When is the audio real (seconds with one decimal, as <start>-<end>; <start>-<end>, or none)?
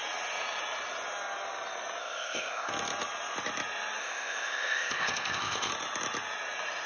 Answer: 0.0-2.0; 2.7-4.0; 5.7-6.9